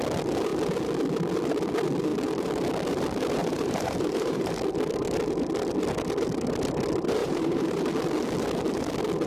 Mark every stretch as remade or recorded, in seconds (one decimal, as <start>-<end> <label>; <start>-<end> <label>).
0.0-3.4 recorded; 3.4-4.6 remade; 4.6-7.2 recorded; 7.2-7.8 remade; 7.8-9.3 recorded